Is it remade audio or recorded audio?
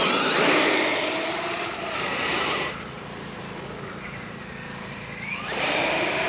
remade